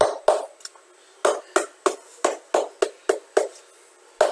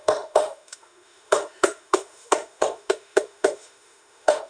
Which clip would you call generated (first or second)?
second